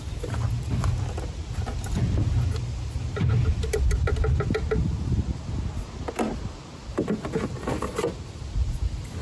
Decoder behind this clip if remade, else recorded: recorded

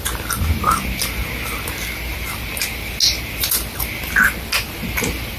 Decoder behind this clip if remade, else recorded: recorded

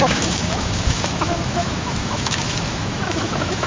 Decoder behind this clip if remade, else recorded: remade, autoencoder, DAC-VAE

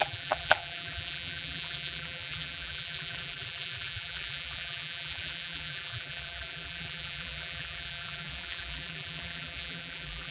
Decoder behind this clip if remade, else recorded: remade, vocoder, BigVGAN v2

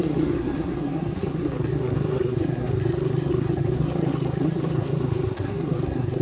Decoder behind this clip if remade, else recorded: remade, codec, SNAC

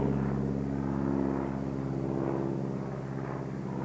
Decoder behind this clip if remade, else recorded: recorded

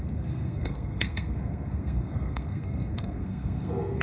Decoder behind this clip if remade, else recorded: remade, codec, SNAC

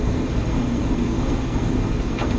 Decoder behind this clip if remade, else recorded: remade, codec, SNAC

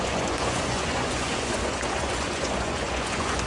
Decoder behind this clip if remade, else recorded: remade, vocoder, Vocos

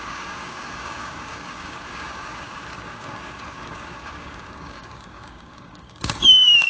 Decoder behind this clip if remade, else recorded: remade, codec, DAC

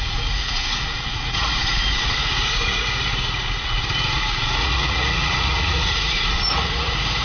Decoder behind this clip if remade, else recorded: remade, vocoder, Vocos